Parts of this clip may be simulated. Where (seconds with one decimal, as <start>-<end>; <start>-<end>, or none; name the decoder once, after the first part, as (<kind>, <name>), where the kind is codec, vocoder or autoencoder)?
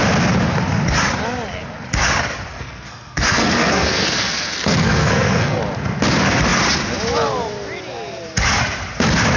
2.5-5.6 (codec, SNAC)